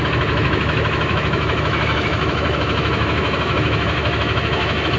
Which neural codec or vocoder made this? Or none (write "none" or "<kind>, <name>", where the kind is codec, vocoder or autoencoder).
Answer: autoencoder, DAC-VAE